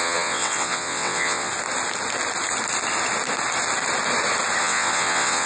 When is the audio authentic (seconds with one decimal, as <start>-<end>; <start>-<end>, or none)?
1.5-4.6